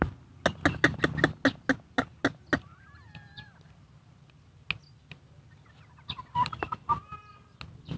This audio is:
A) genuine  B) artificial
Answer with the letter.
A